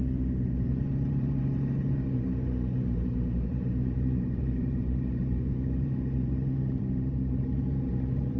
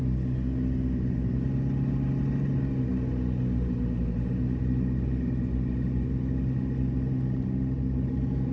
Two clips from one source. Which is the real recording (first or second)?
second